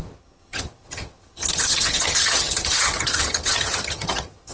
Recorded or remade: remade